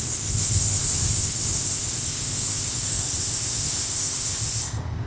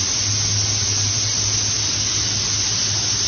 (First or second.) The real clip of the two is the second